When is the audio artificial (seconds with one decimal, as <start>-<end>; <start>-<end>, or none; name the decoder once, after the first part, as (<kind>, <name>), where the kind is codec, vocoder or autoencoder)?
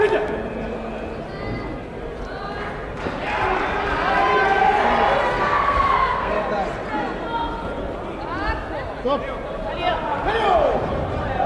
5.3-6.3 (codec, SNAC)